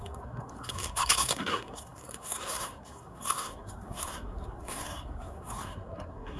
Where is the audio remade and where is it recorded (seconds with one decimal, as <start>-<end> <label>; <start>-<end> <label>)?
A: 0.0-6.4 remade